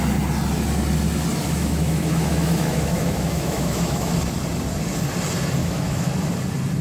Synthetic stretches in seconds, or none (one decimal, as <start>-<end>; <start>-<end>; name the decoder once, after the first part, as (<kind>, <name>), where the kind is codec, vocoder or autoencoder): 1.4-4.1 (autoencoder, DAC-VAE); 5.6-6.1